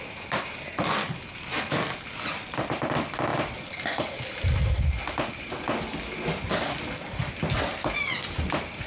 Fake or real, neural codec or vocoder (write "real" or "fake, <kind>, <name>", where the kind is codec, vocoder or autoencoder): real